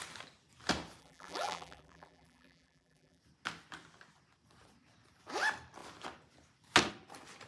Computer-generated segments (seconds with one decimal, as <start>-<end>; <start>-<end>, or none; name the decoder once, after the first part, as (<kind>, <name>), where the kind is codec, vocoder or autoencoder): 1.0-3.2 (vocoder, BigVGAN v2)